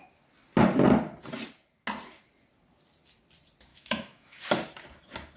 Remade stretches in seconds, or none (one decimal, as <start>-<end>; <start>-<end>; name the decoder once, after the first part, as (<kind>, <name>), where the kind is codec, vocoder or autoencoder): 3.7-4.4 (autoencoder, DAC-VAE)